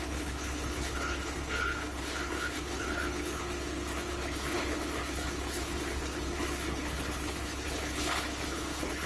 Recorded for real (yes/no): no